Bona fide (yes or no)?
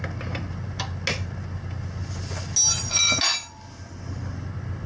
yes